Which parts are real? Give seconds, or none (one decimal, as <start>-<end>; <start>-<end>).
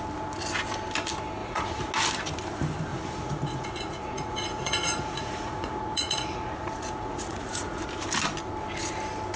0.0-1.4; 1.9-2.9; 7.8-9.4